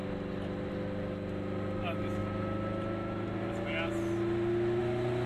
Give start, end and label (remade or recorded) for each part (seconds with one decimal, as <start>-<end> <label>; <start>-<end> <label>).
0.0-5.3 recorded